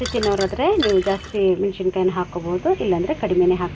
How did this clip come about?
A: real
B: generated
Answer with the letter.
A